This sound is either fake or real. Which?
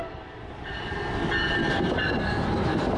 real